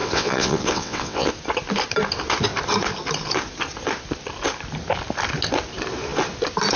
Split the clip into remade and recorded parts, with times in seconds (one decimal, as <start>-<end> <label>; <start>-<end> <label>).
0.0-1.3 remade; 1.3-6.8 recorded